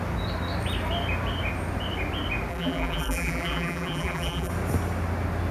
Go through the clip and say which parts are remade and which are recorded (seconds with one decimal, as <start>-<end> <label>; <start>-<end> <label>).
0.0-2.5 recorded; 2.5-4.5 remade; 4.5-5.5 recorded